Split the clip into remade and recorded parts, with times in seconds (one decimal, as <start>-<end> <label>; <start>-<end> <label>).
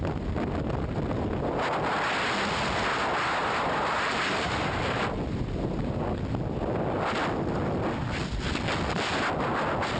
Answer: 0.0-3.4 recorded; 3.4-4.8 remade; 4.8-10.0 recorded